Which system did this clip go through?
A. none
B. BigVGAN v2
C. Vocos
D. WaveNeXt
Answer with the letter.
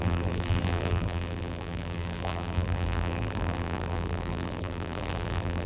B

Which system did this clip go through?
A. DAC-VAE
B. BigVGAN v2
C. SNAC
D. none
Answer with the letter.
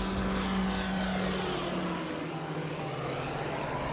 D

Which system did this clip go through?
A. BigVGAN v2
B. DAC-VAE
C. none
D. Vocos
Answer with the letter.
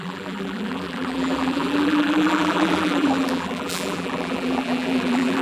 A